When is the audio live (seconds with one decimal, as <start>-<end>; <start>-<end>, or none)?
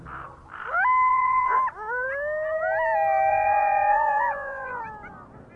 0.0-1.1; 1.6-3.3; 4.8-5.6